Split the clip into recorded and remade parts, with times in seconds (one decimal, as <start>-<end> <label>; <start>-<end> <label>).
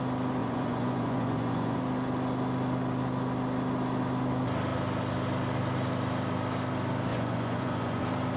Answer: 0.0-0.4 recorded; 0.4-1.8 remade; 1.8-7.1 recorded; 7.1-8.0 remade; 8.0-8.4 recorded